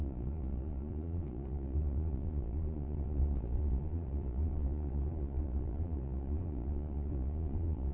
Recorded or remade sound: remade